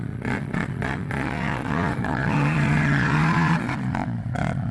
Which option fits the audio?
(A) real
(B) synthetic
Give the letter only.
B